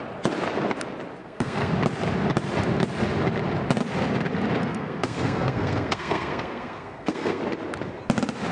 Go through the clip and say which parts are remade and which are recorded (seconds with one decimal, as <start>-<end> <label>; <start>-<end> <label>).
0.0-1.2 recorded; 1.2-1.7 remade; 1.7-4.6 recorded; 4.6-7.4 remade; 7.4-8.5 recorded